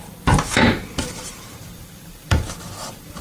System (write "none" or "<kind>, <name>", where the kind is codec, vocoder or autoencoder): vocoder, BigVGAN v2